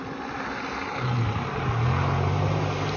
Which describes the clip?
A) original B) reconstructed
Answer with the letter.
A